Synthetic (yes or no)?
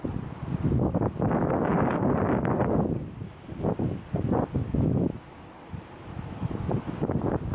no